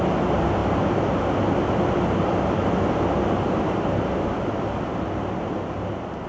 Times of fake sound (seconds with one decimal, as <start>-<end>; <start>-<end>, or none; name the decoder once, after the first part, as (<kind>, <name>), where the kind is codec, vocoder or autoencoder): none